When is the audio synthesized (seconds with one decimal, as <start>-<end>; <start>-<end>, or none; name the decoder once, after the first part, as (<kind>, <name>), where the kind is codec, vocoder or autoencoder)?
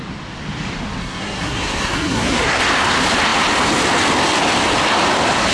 1.0-2.6 (codec, SNAC)